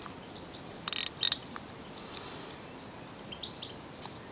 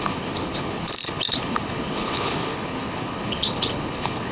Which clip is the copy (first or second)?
second